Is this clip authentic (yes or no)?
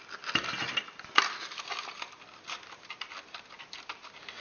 yes